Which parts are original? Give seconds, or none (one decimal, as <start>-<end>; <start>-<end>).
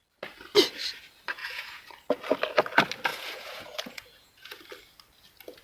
0.0-1.4; 1.9-3.1; 4.6-5.6